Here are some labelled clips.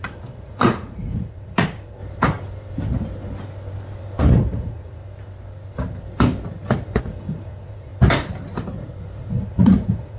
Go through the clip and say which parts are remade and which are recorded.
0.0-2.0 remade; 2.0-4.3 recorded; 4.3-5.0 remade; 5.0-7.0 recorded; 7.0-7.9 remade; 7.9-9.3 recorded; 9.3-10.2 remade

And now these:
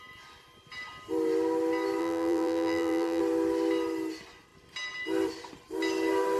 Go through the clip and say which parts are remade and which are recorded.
0.0-2.0 recorded; 2.0-3.2 remade; 3.2-6.4 recorded

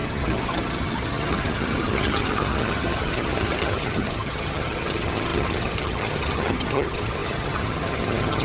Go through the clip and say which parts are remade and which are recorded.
0.0-8.4 remade

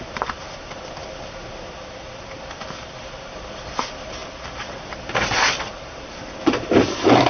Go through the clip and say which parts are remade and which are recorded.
0.0-7.3 remade

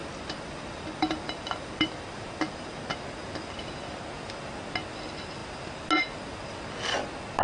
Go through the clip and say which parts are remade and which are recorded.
0.0-2.9 remade; 2.9-7.4 recorded

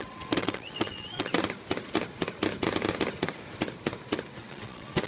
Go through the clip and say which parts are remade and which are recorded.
0.0-1.3 remade; 1.3-4.4 recorded; 4.4-5.1 remade